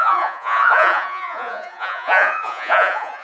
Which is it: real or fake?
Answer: fake